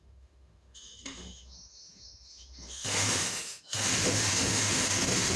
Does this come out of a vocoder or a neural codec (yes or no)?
yes